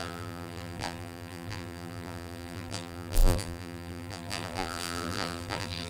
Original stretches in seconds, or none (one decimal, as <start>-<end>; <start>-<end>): none